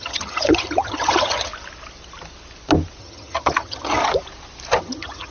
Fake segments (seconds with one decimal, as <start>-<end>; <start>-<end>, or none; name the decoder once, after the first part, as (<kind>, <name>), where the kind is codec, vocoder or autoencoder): 0.0-1.5 (vocoder, HiFi-GAN); 3.0-4.0; 4.8-5.3